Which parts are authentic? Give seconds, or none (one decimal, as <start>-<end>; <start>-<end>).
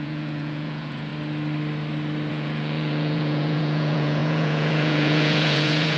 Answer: 1.1-2.3